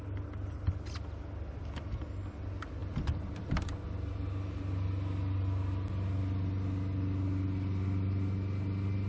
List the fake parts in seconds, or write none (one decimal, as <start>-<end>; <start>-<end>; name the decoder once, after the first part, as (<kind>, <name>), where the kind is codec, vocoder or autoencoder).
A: none